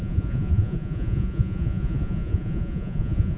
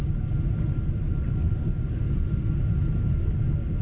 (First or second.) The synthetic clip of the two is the first